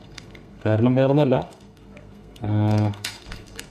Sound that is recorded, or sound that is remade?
remade